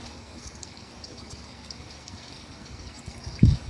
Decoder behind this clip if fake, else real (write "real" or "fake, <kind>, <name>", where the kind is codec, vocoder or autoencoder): fake, codec, SNAC